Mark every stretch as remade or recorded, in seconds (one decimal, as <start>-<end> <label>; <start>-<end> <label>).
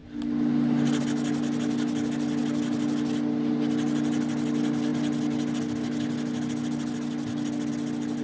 0.0-8.2 recorded